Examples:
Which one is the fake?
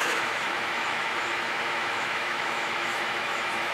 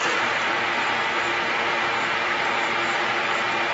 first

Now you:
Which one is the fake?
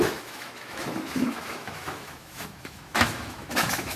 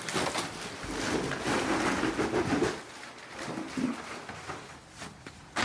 first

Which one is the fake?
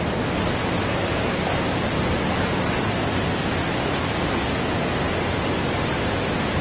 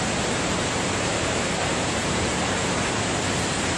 second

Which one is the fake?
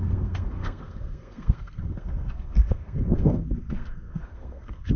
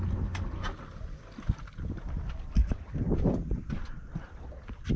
first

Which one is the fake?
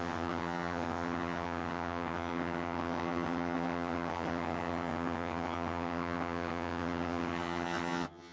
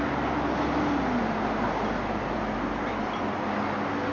first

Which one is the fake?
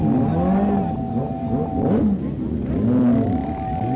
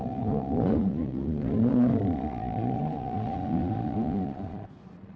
second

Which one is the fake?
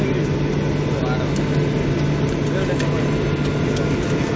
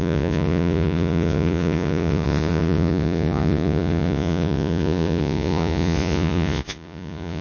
second